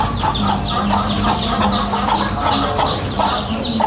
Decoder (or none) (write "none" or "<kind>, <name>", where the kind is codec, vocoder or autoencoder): none